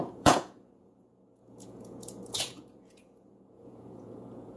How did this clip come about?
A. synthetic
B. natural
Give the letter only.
A